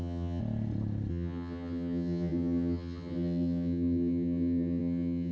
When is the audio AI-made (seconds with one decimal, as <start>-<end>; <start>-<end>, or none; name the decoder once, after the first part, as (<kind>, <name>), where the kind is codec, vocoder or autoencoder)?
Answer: 0.0-0.4 (vocoder, HiFi-GAN); 1.1-5.3

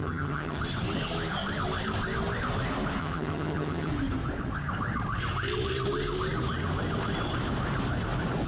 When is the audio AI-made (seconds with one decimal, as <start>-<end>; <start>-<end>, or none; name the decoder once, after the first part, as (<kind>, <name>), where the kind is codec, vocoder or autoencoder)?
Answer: 0.0-0.6 (vocoder, HiFi-GAN); 3.0-3.9

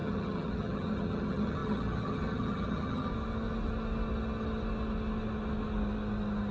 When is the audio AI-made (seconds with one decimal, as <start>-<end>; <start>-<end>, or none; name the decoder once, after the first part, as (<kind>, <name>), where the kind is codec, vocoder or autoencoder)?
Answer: 0.0-3.1 (vocoder, HiFi-GAN)